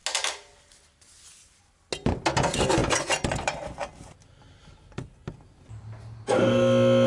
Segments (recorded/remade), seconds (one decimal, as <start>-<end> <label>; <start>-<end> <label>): 0.0-7.1 recorded